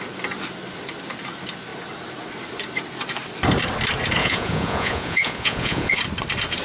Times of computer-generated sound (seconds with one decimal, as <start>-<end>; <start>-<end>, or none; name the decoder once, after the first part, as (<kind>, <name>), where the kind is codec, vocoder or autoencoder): 4.2-6.0 (vocoder, Vocos)